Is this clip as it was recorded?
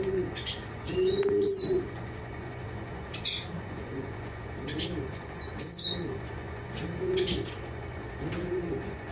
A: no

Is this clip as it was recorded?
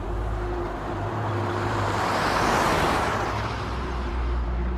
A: no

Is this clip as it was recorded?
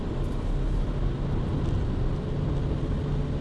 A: yes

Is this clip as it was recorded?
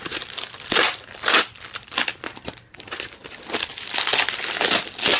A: yes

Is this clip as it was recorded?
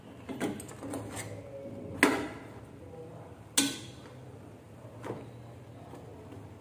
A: yes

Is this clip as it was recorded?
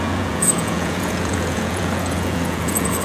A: no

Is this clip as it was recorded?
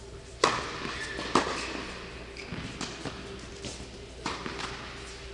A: yes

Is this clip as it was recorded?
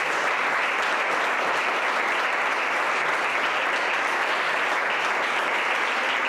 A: yes